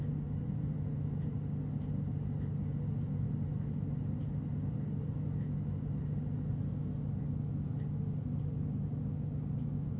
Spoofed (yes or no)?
no